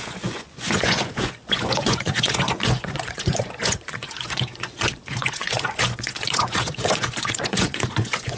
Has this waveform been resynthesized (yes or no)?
yes